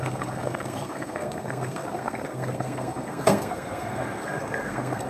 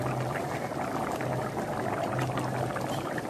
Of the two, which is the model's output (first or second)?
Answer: first